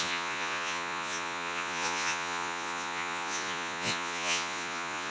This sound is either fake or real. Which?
fake